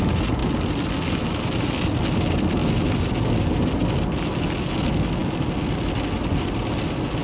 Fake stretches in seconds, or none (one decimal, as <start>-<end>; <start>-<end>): none